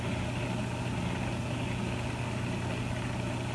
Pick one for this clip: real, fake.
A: real